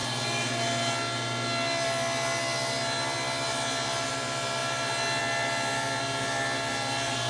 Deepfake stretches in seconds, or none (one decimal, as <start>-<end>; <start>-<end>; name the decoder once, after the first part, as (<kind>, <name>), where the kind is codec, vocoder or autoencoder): none